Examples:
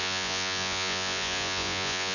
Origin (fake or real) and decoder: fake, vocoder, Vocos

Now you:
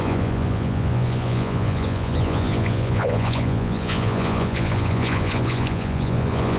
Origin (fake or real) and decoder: fake, vocoder, Vocos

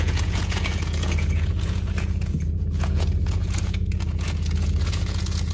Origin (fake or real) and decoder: fake, vocoder, Vocos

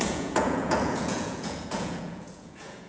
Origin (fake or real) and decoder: fake, vocoder, Vocos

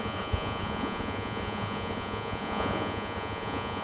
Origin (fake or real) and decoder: fake, vocoder, Vocos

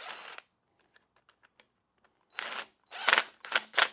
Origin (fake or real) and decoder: real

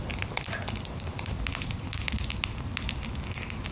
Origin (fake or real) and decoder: real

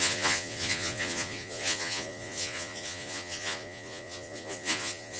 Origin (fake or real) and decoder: fake, vocoder, Vocos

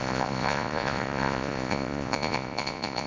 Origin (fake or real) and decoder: fake, vocoder, Vocos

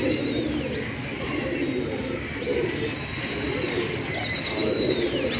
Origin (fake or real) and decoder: real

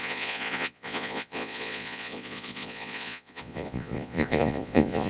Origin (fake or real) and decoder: fake, vocoder, Vocos